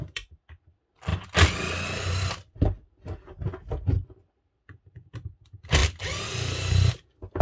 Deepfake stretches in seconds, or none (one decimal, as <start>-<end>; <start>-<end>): none